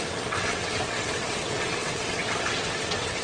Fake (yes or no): yes